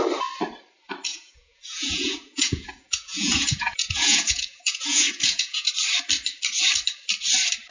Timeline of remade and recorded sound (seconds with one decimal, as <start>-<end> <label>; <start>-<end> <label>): 0.0-1.1 recorded; 1.1-5.7 remade; 5.7-7.7 recorded